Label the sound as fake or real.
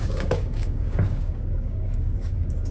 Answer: fake